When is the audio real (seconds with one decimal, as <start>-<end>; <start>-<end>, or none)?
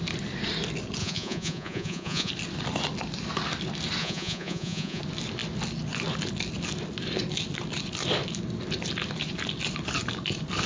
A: 0.0-1.0; 2.3-4.0; 5.0-10.7